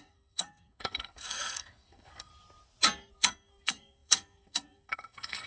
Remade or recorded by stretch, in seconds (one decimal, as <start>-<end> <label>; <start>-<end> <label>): 0.0-2.3 remade; 2.3-3.1 recorded; 3.1-5.5 remade